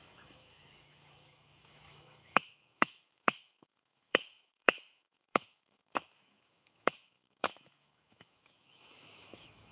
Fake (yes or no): yes